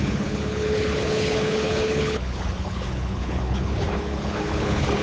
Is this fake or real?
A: fake